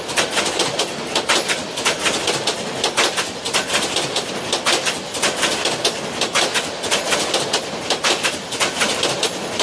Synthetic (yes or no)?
no